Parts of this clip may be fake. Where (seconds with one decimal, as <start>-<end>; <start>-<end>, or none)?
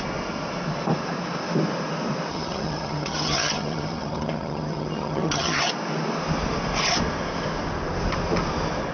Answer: 2.3-5.6